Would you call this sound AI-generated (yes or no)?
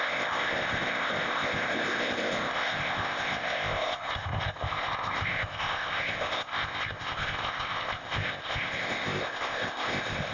yes